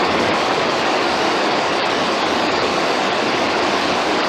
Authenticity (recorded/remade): remade